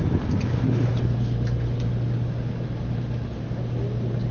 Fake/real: real